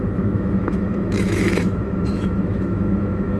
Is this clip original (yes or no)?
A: no